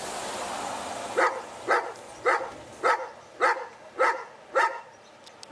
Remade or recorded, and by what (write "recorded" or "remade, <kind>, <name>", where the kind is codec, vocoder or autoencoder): recorded